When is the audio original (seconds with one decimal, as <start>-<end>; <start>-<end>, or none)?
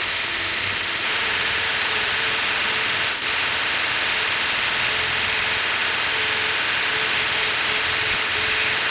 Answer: 0.0-1.0; 2.6-8.9